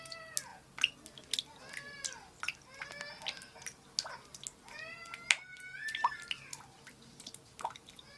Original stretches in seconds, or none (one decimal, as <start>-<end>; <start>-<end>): 0.0-8.2